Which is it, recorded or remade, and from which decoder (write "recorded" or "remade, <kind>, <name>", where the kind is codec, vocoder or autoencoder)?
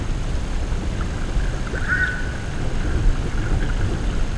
recorded